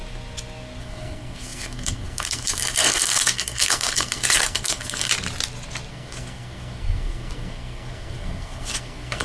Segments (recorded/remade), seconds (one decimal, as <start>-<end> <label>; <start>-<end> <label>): 0.0-0.8 recorded; 0.8-5.1 remade; 5.1-5.9 recorded; 5.9-9.2 remade